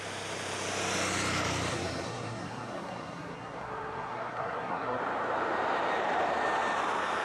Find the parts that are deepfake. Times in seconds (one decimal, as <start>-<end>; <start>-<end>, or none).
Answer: 1.7-5.0